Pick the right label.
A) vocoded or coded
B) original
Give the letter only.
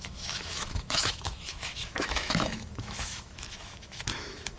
A